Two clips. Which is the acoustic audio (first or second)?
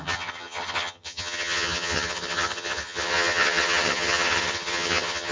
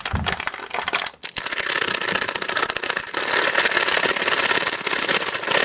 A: second